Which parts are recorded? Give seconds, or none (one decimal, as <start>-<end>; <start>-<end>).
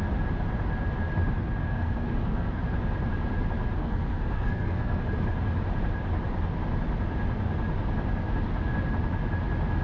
0.0-1.6; 2.6-3.8; 5.0-9.8